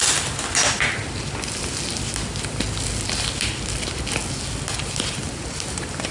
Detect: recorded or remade recorded